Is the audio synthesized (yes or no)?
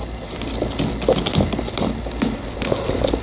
no